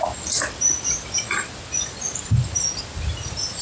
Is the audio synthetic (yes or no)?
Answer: no